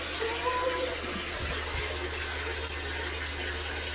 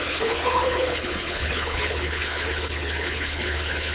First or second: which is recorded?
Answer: first